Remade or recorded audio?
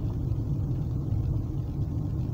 recorded